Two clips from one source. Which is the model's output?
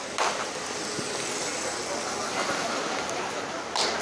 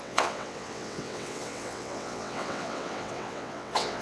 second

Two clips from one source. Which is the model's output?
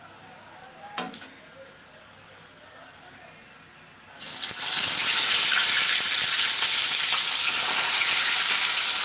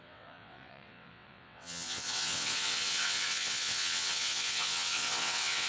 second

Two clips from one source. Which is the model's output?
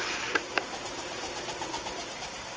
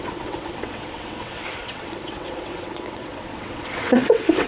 second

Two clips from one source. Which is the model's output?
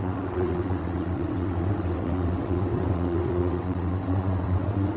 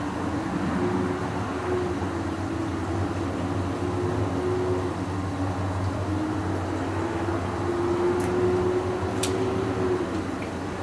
first